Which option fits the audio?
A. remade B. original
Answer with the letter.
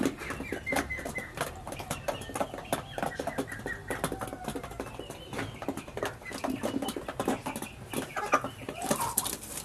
B